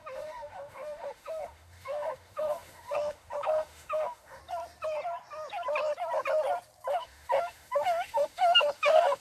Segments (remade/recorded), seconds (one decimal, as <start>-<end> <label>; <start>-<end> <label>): 0.0-4.4 remade; 4.4-6.9 recorded; 6.9-9.2 remade